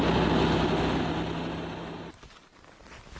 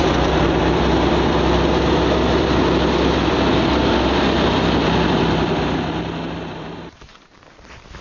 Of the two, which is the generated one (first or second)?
second